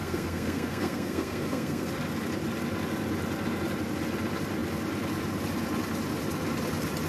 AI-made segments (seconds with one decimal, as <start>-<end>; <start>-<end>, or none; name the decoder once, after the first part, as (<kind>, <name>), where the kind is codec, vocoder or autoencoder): 0.0-1.9 (codec, SNAC)